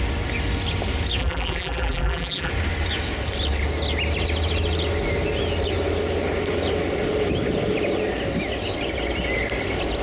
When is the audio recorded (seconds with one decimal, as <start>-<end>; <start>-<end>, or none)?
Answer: 0.0-1.2; 2.5-10.0